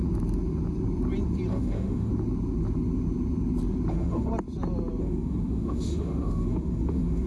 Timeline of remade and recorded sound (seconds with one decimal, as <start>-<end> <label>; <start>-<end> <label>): 0.0-1.5 recorded; 1.5-2.1 remade; 2.1-3.9 recorded; 3.9-4.3 remade; 4.3-5.0 recorded; 5.0-7.3 remade

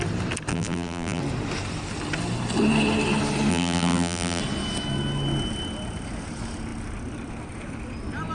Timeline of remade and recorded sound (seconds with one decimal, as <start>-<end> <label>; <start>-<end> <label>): 0.0-0.5 recorded; 0.5-1.2 remade; 1.2-3.5 recorded; 3.5-4.4 remade; 4.4-8.3 recorded

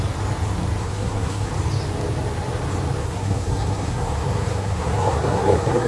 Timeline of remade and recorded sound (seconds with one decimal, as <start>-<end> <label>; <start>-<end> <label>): 0.0-0.8 recorded; 0.8-1.5 remade; 1.5-3.0 recorded; 3.0-5.9 remade

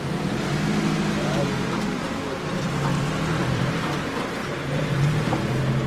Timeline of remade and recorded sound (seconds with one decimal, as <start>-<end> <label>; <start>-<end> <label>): 0.0-2.9 recorded; 2.9-3.7 remade; 3.7-4.4 recorded; 4.4-5.5 remade; 5.5-5.9 recorded

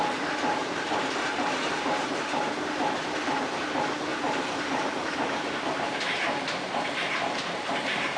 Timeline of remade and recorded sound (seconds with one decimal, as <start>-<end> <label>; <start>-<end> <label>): 0.0-0.6 recorded; 0.6-2.5 remade; 2.5-4.1 recorded; 4.1-8.2 remade